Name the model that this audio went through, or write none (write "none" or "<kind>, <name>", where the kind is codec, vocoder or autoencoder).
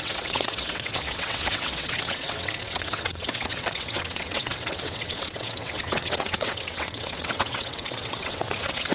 vocoder, WaveNeXt